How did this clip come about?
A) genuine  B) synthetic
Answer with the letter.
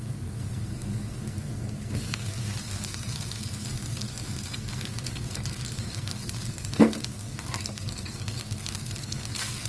B